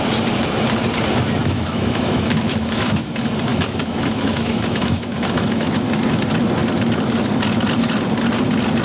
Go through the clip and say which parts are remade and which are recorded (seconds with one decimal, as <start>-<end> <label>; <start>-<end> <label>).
0.0-1.4 recorded; 1.4-3.1 remade; 3.1-3.5 recorded; 3.5-5.7 remade; 5.7-8.8 recorded